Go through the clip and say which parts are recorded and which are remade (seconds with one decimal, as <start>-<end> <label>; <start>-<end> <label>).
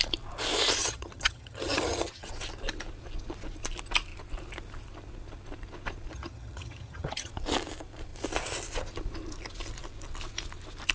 0.0-0.8 recorded; 0.8-2.3 remade; 2.3-6.1 recorded; 6.1-7.3 remade; 7.3-10.9 recorded